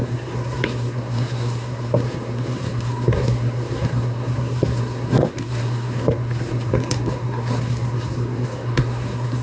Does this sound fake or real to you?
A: fake